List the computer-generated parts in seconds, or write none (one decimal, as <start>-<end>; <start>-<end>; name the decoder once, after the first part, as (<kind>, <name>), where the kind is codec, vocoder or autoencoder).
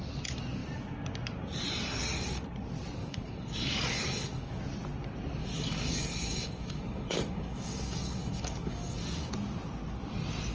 3.0-4.6 (codec, DAC); 5.4-9.3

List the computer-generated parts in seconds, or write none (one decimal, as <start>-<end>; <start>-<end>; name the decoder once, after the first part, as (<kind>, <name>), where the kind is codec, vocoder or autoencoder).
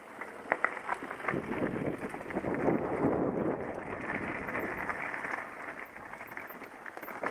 none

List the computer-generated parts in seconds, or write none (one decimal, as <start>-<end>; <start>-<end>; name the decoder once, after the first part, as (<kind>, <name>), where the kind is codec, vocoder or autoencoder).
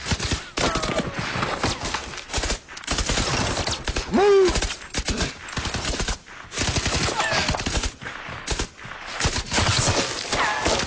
none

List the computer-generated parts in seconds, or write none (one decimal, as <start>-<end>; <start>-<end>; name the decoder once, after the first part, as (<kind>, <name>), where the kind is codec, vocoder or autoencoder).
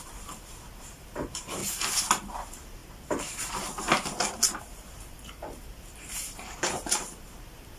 0.0-1.6 (vocoder, BigVGAN v2); 2.3-2.8; 4.6-7.8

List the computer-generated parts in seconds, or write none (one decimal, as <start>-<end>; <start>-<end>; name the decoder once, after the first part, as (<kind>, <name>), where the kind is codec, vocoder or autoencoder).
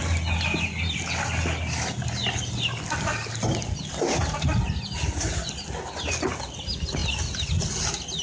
none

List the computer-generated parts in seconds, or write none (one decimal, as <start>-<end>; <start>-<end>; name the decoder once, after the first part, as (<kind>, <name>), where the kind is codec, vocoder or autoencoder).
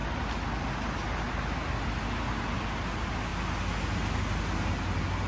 none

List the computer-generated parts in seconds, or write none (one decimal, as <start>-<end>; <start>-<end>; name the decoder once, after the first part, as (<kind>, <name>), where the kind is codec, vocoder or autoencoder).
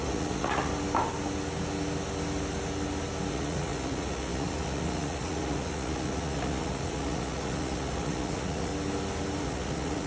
0.0-0.7 (vocoder, Vocos); 3.3-8.7; 9.4-10.1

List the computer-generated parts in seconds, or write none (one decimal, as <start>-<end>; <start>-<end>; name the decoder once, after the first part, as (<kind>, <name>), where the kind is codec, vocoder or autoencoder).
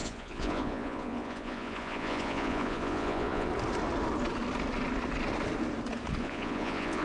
0.0-3.5 (vocoder, Vocos); 6.2-7.0